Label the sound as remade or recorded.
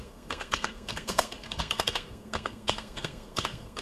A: remade